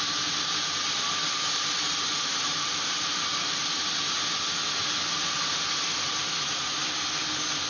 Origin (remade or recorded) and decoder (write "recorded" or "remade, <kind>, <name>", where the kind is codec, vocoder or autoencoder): recorded